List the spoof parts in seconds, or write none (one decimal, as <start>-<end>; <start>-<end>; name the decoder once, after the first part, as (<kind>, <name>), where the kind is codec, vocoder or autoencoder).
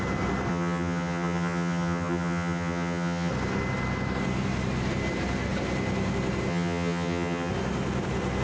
0.5-3.3 (vocoder, HiFi-GAN); 6.5-7.5